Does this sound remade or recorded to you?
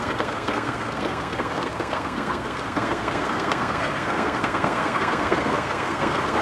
remade